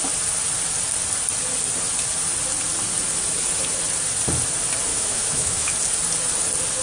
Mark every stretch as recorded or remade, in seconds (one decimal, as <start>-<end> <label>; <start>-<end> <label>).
0.0-4.9 recorded; 4.9-5.7 remade; 5.7-6.8 recorded